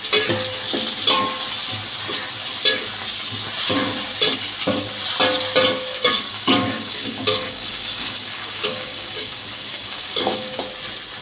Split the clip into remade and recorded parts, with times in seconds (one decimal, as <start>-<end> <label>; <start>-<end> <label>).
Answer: 0.0-5.9 recorded; 5.9-10.6 remade; 10.6-11.2 recorded